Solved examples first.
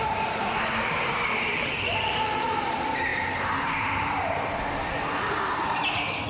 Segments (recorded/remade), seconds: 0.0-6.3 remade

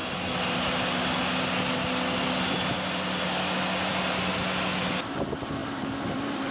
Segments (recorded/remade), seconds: 0.0-5.6 recorded; 5.6-6.5 remade